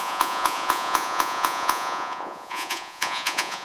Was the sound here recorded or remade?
remade